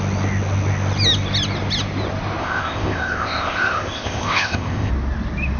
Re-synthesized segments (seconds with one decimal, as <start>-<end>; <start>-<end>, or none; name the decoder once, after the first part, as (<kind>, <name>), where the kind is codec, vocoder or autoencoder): 2.4-4.9 (codec, ZipCodec)